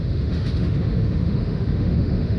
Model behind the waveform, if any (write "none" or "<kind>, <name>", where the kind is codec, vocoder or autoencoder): autoencoder, DAC-VAE